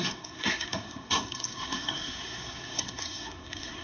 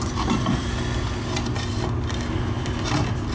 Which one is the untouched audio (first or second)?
second